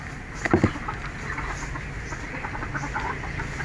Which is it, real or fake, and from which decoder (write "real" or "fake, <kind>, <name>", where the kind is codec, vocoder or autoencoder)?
real